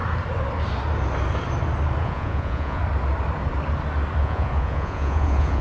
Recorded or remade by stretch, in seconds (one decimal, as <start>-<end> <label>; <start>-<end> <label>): 0.0-2.0 recorded; 2.0-2.8 remade; 2.8-4.2 recorded; 4.2-5.6 remade